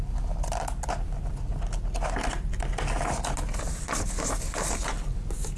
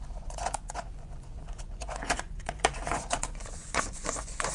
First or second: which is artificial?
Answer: second